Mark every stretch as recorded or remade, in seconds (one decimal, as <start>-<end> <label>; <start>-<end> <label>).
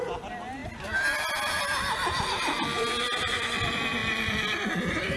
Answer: 0.0-5.2 recorded